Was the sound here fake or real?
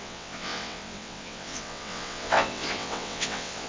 fake